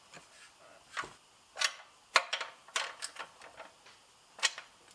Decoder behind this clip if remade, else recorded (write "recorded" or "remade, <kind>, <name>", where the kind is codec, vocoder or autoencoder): recorded